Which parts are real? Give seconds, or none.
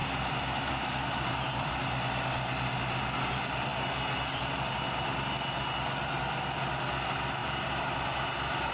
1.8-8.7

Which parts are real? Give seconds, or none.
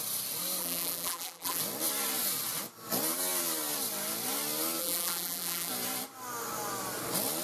0.0-0.6; 1.6-4.8; 5.7-7.4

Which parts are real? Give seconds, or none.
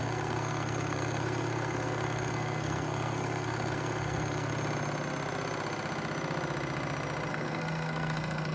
4.5-7.3